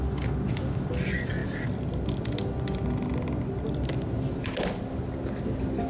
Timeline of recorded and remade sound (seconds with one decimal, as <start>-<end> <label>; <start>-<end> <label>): 0.0-5.9 recorded